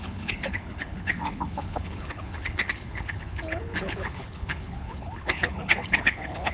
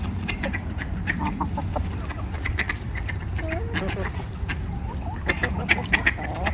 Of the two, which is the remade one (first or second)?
first